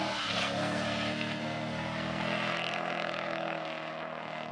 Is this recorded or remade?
remade